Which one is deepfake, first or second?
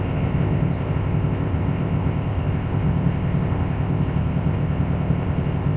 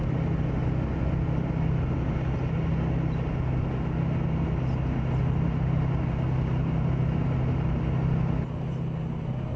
first